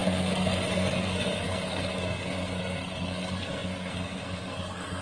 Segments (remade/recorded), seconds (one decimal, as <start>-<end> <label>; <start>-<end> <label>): 0.0-5.0 remade